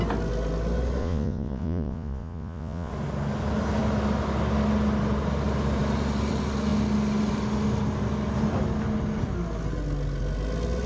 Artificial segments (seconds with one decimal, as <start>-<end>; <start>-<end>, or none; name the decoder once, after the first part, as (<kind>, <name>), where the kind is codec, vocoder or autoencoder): 1.0-2.9 (vocoder, Vocos)